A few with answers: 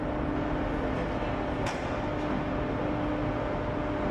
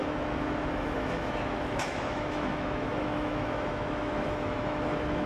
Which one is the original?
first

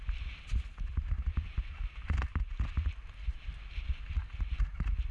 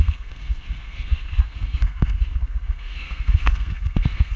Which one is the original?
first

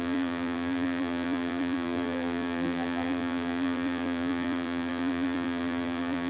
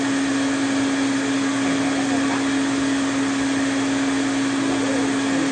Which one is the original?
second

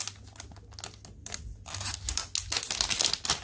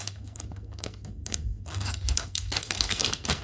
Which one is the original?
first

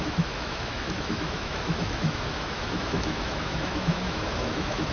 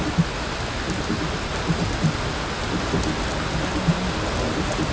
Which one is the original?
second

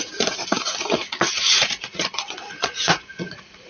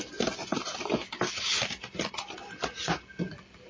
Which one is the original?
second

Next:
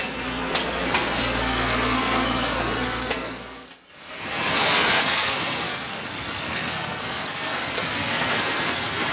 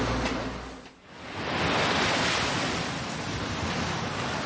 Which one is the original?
second